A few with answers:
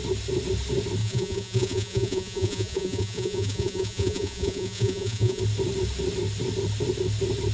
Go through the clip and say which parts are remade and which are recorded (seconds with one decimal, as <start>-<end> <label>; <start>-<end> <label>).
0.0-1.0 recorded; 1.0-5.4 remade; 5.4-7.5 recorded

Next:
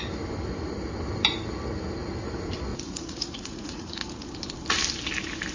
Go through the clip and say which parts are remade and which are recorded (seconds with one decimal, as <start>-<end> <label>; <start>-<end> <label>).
0.0-2.7 recorded; 2.7-4.3 remade; 4.3-5.5 recorded

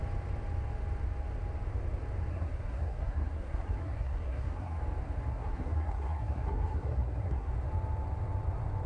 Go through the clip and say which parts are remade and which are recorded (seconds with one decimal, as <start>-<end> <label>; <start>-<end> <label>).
0.0-2.3 recorded; 2.3-4.8 remade; 4.8-5.3 recorded; 5.3-7.5 remade; 7.5-8.9 recorded